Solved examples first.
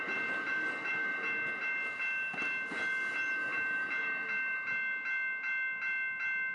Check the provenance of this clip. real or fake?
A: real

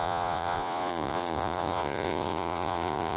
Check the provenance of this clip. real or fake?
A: fake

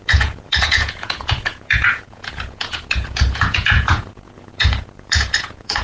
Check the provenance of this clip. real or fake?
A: fake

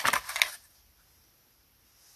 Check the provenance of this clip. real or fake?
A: real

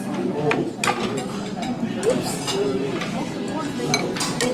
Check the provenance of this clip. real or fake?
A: real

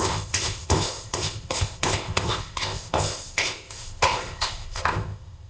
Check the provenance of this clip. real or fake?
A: fake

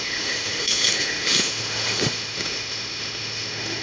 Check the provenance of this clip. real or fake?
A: fake